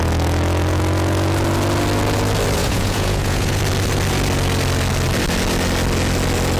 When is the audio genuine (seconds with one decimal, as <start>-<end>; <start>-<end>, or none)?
0.0-2.6; 3.6-6.6